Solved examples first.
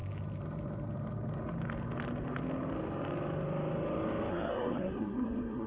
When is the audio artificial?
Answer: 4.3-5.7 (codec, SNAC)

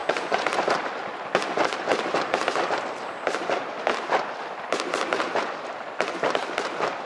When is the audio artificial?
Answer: 0.0-0.5 (vocoder, Vocos)

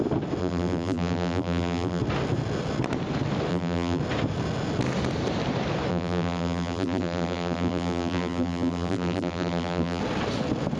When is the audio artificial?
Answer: 0.4-2.0 (vocoder, BigVGAN v2); 3.5-4.0; 5.9-10.0

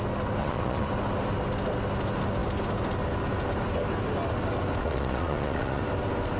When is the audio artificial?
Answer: 0.4-0.9 (vocoder, Vocos); 4.8-5.8

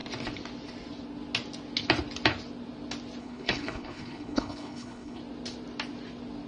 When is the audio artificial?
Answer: 3.2-5.2 (codec, HILCodec)

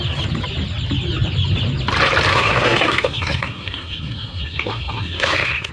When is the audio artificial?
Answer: 2.3-5.7 (codec, SNAC)

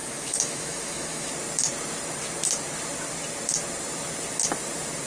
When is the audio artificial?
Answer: 0.0-1.3 (autoencoder, DAC-VAE)

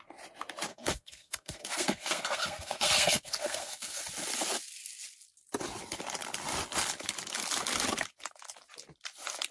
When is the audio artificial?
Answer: 0.7-4.0 (codec, SNAC)